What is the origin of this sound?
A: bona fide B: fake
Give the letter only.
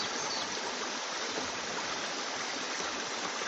A